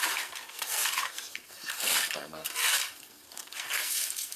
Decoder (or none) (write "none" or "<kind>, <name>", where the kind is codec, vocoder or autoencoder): codec, SNAC